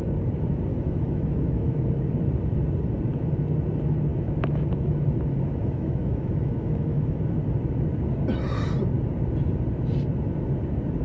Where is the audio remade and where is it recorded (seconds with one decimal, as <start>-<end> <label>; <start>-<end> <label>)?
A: 0.0-0.7 recorded; 0.7-1.9 remade; 1.9-4.1 recorded; 4.1-7.2 remade; 7.2-11.0 recorded